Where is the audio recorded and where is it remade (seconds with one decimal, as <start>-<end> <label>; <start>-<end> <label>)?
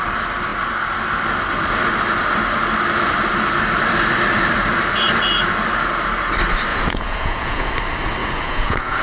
0.0-6.7 recorded; 6.7-7.7 remade; 7.7-8.2 recorded; 8.2-9.0 remade